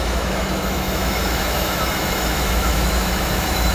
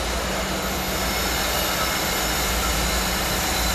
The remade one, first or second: first